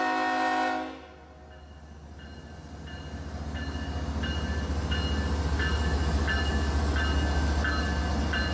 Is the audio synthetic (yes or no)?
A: no